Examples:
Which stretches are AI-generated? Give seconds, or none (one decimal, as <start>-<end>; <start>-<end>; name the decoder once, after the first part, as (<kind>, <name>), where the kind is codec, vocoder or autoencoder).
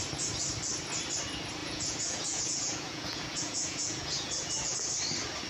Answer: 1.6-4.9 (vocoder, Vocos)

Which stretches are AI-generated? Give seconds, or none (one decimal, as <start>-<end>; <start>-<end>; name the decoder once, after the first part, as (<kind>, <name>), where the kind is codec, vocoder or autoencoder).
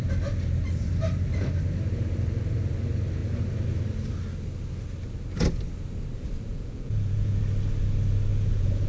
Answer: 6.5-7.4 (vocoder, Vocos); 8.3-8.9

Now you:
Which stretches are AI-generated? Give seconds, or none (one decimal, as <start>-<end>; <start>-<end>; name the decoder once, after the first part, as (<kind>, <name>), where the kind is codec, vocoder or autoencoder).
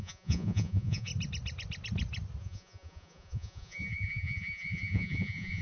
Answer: 0.0-1.1 (vocoder, Vocos); 2.4-5.6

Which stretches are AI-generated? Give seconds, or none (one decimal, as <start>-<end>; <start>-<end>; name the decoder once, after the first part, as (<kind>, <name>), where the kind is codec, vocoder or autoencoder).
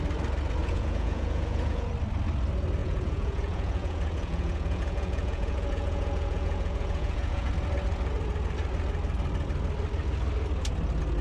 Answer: 0.6-1.9 (vocoder, Vocos); 2.8-7.5